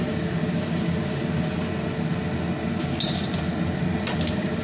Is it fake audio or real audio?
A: real